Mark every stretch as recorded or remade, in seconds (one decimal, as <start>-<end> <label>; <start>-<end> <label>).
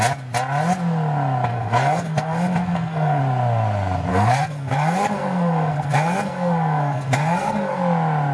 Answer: 0.0-1.5 recorded; 1.5-3.2 remade; 3.2-4.1 recorded; 4.1-7.8 remade; 7.8-8.3 recorded